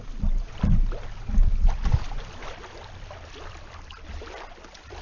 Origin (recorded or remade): recorded